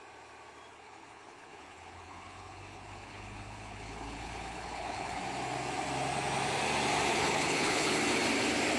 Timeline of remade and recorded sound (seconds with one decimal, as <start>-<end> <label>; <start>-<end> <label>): 0.0-0.7 recorded; 0.7-5.2 remade; 5.2-7.1 recorded; 7.1-7.9 remade; 7.9-8.8 recorded